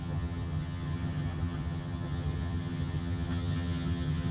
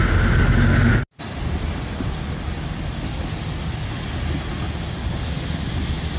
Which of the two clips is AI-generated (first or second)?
first